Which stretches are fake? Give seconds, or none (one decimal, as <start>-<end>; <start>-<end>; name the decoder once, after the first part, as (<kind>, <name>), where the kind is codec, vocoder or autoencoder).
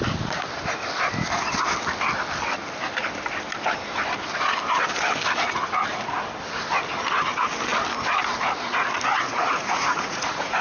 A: 9.3-10.6 (vocoder, Vocos)